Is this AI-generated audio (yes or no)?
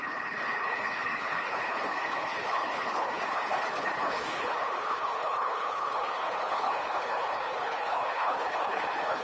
yes